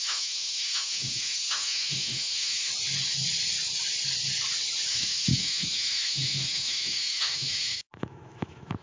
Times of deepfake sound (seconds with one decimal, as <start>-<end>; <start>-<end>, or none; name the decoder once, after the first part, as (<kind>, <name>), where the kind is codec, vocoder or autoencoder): 0.0-2.7 (autoencoder, DAC-VAE); 4.9-8.8